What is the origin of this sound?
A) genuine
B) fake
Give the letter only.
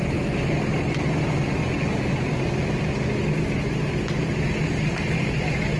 A